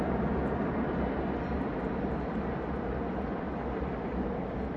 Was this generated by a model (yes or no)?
no